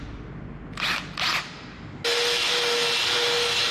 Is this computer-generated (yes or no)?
no